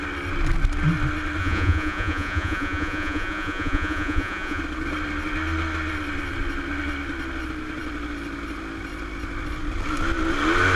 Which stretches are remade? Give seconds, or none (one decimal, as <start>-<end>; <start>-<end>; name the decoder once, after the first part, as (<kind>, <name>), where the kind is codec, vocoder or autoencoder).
1.4-4.6 (vocoder, Vocos)